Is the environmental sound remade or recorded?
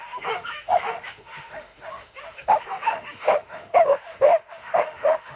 remade